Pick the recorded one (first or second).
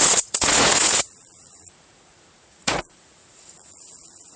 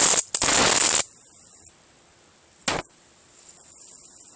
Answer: second